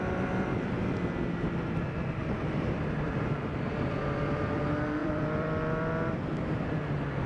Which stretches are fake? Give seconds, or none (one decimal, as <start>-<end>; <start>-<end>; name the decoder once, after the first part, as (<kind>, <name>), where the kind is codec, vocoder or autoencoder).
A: 2.2-4.6 (vocoder, BigVGAN v2); 5.0-5.9